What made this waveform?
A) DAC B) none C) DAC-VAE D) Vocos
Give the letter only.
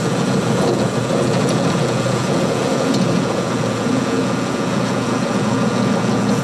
D